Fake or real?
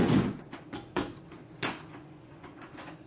fake